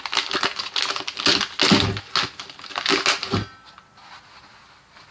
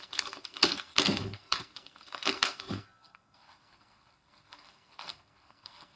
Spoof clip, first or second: second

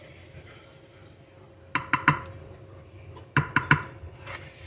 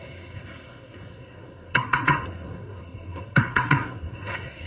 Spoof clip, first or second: second